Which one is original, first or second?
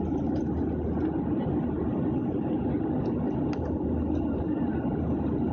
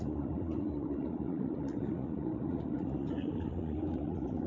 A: first